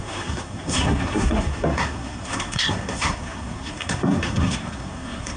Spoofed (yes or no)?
yes